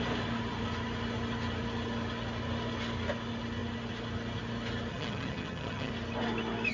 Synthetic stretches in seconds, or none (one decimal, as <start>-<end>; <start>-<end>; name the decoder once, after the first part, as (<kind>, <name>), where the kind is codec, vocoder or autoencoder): 4.9-5.9 (vocoder, HiFi-GAN)